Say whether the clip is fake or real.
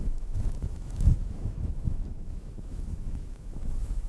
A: fake